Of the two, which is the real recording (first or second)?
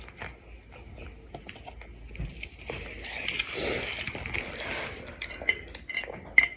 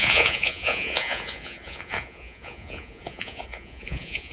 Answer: first